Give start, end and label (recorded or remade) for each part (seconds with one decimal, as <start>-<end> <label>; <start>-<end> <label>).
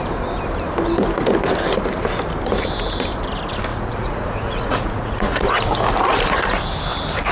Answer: 0.0-3.7 recorded; 3.7-5.5 remade; 5.5-7.3 recorded